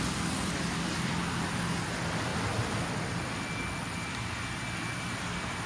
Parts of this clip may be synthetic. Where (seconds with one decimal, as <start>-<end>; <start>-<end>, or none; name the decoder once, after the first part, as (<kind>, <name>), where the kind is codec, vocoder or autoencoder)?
none